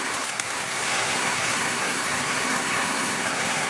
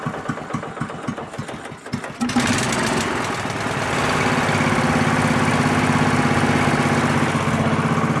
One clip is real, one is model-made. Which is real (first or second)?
second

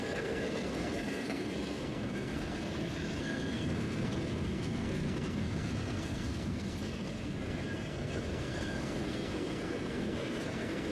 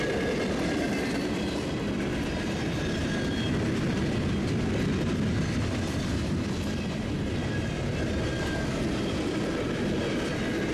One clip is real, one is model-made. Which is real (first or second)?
second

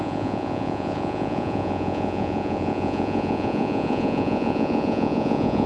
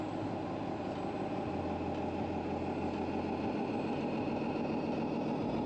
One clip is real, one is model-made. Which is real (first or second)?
second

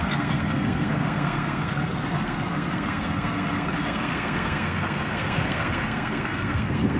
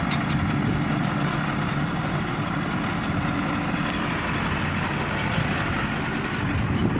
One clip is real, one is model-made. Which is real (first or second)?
second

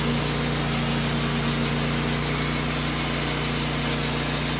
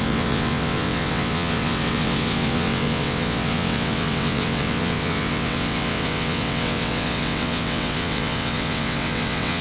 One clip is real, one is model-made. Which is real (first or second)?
first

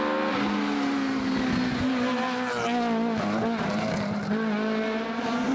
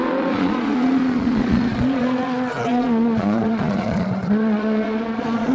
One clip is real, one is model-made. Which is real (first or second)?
first